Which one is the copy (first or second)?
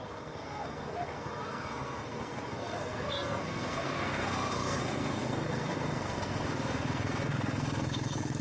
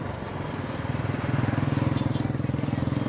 first